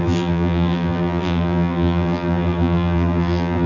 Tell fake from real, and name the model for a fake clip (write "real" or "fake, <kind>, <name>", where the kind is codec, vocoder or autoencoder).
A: fake, vocoder, BigVGAN v2